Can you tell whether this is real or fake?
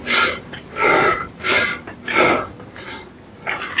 real